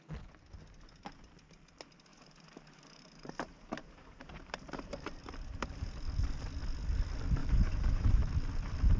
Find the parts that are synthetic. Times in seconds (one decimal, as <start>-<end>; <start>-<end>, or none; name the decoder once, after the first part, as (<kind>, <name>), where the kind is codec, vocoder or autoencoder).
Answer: 2.1-5.2 (vocoder, BigVGAN v2); 7.4-8.2